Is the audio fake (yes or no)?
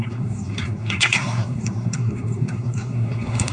yes